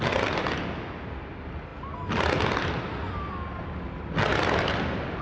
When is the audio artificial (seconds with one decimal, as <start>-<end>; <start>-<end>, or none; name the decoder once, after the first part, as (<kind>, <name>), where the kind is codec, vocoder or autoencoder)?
none